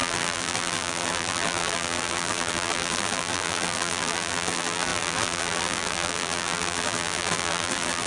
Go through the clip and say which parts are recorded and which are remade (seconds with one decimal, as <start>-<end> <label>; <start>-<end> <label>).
0.0-8.1 remade